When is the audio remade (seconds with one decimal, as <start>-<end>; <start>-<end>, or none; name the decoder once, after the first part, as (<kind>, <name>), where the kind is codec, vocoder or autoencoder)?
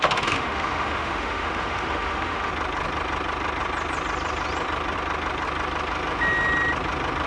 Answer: 0.0-2.5 (autoencoder, DAC-VAE)